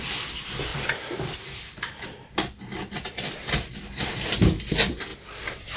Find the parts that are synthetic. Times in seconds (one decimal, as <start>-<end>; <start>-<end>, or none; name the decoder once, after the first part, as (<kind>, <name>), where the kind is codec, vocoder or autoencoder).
0.7-4.1 (vocoder, BigVGAN v2)